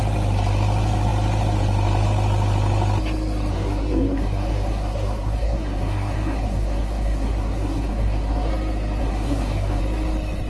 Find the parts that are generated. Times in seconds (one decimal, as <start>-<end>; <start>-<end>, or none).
3.5-8.5; 9.0-9.8